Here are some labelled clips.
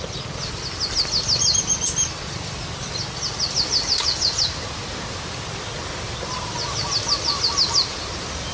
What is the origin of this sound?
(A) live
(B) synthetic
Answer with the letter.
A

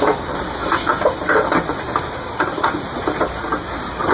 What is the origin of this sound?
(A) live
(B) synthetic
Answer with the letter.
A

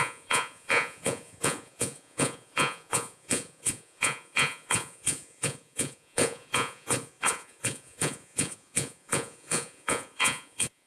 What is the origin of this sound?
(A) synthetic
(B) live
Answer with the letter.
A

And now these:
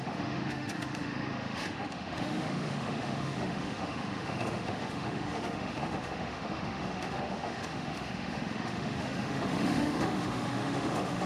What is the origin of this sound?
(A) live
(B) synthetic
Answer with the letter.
B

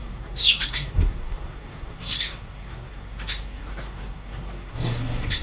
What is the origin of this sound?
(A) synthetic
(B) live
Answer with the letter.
A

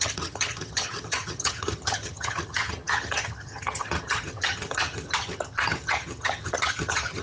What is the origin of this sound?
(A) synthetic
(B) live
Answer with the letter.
A